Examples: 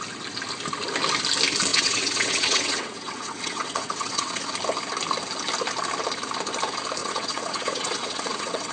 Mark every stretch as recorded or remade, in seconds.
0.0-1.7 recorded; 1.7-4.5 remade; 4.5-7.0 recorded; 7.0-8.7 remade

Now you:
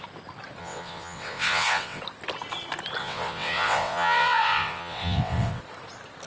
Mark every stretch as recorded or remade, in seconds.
0.0-0.6 recorded; 0.6-2.0 remade; 2.0-3.0 recorded; 3.0-5.6 remade; 5.6-6.3 recorded

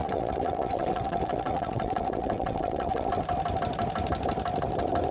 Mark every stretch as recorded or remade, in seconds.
0.0-3.1 remade; 3.1-5.1 recorded

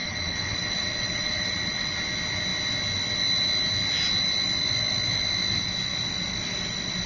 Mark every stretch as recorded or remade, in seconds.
0.0-1.9 remade; 1.9-7.1 recorded

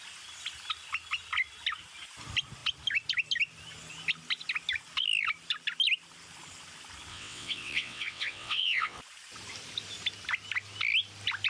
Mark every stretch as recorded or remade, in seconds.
0.0-7.1 recorded; 7.1-9.0 remade; 9.0-11.5 recorded

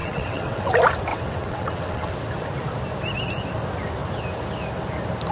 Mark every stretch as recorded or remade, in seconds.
0.0-0.7 remade; 0.7-1.1 recorded; 1.1-2.1 remade; 2.1-5.3 recorded

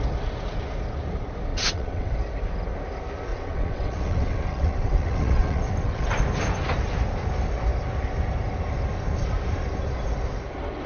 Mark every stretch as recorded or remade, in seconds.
0.0-1.5 recorded; 1.5-2.1 remade; 2.1-3.3 recorded; 3.3-6.1 remade; 6.1-10.9 recorded

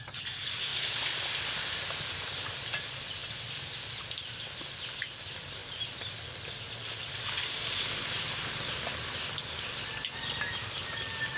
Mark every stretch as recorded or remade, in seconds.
0.0-11.4 recorded